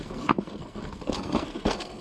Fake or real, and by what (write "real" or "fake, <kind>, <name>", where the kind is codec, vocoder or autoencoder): fake, codec, SNAC